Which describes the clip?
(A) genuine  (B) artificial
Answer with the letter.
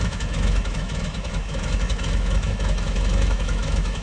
B